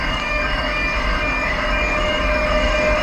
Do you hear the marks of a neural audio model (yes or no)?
yes